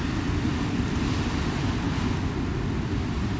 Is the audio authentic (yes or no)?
yes